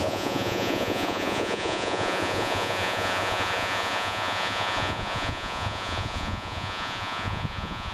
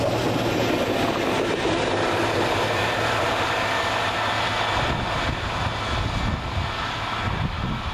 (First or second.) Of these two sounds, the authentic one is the second